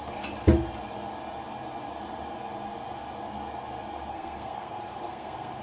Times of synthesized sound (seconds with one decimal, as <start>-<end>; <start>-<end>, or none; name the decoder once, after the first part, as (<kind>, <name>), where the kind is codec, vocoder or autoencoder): 4.1-5.6 (codec, SNAC)